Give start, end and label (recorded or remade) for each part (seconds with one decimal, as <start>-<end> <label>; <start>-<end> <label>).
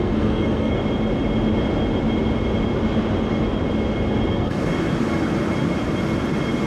0.0-0.8 remade; 0.8-4.3 recorded; 4.3-4.7 remade; 4.7-6.7 recorded